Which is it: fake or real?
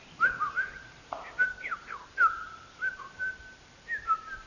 fake